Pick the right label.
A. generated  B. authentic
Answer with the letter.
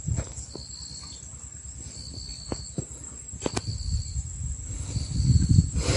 B